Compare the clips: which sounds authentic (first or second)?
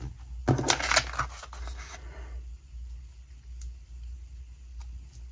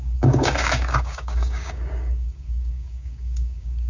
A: first